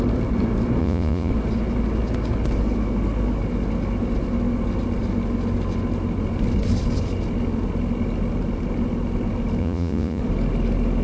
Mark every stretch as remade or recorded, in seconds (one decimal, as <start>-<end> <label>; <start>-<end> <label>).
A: 0.0-0.8 recorded; 0.8-1.3 remade; 1.3-9.6 recorded; 9.6-10.2 remade; 10.2-11.0 recorded